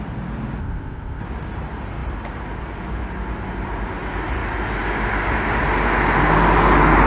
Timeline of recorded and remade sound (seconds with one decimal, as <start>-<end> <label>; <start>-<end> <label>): 0.0-0.6 recorded; 0.6-1.2 remade; 1.2-7.1 recorded